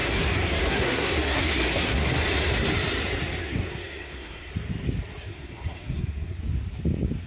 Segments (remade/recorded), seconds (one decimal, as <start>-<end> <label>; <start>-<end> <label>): 0.0-2.1 remade; 2.1-3.4 recorded; 3.4-4.5 remade; 4.5-5.3 recorded; 5.3-6.4 remade; 6.4-7.3 recorded